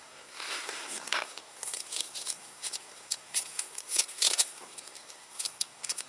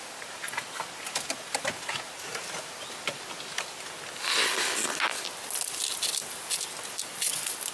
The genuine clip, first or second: second